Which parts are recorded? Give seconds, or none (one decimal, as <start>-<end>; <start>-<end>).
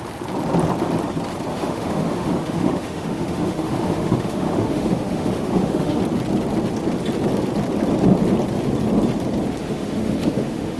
0.0-1.5; 6.0-9.6